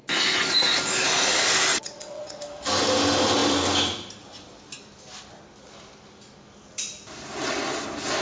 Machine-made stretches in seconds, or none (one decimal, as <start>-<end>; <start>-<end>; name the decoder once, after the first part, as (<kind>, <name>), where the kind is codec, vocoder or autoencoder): 1.7-2.4 (vocoder, WaveNeXt)